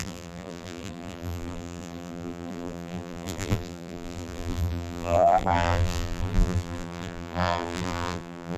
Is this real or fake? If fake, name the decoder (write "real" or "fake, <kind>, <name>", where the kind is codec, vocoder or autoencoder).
fake, vocoder, BigVGAN v2